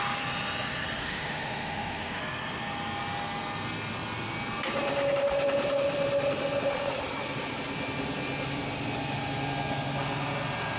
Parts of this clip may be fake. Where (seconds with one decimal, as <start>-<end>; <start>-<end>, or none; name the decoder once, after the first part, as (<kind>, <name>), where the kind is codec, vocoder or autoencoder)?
1.0-2.2 (autoencoder, DAC-VAE)